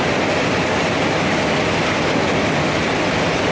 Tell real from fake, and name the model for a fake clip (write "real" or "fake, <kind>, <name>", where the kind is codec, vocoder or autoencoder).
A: real